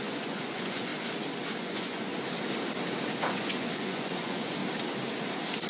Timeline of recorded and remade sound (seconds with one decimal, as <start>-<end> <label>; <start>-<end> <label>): 0.0-0.9 remade; 0.9-1.6 recorded; 1.6-2.1 remade; 2.1-3.2 recorded; 3.2-4.6 remade; 4.6-5.7 recorded